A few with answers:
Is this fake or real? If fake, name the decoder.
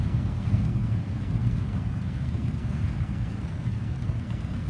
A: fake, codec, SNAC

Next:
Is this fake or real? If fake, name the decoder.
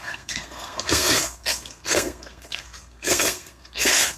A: fake, codec, SNAC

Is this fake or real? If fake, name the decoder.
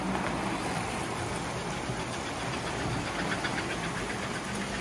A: real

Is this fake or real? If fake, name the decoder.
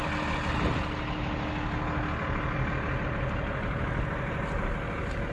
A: real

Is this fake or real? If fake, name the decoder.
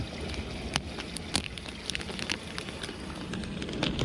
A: real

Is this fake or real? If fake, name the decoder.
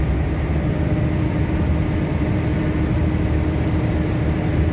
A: real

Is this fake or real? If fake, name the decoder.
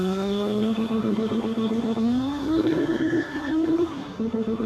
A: fake, codec, SNAC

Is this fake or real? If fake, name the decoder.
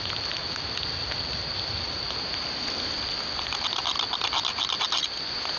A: real